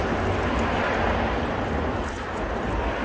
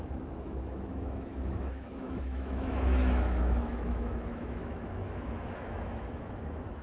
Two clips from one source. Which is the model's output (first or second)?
second